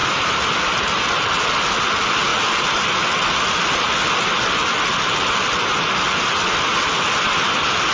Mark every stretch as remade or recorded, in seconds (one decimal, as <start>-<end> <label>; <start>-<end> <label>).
0.0-0.8 remade; 0.8-7.9 recorded